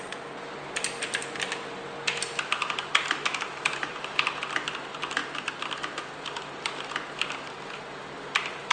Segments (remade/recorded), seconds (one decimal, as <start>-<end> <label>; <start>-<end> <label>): 0.0-8.7 recorded